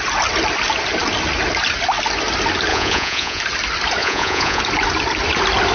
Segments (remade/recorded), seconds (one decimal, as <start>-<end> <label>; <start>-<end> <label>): 0.0-2.7 recorded; 2.7-3.4 remade; 3.4-4.0 recorded; 4.0-4.6 remade; 4.6-5.7 recorded